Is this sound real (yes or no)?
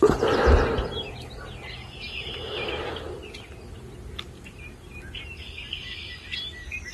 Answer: yes